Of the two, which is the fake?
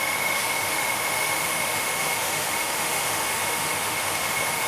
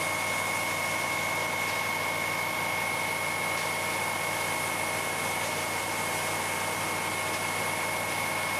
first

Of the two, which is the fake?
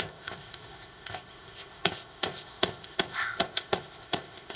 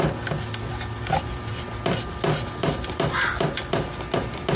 first